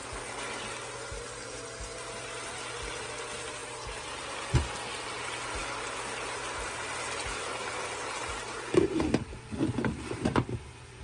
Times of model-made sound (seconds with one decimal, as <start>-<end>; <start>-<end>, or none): none